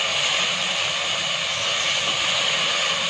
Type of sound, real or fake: real